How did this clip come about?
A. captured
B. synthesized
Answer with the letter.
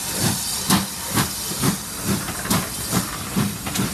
A